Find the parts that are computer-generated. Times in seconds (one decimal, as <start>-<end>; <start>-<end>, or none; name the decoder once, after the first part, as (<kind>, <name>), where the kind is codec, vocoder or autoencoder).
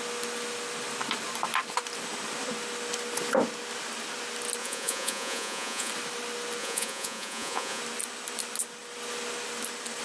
4.6-5.9 (vocoder, Vocos); 6.6-7.8